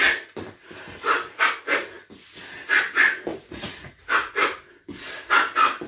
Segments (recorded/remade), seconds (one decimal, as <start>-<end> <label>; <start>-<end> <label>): 0.0-3.3 recorded; 3.3-4.7 remade; 4.7-5.9 recorded